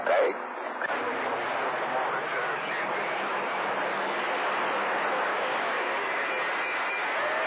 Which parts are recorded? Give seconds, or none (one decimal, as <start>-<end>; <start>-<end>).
0.0-5.3; 6.3-7.5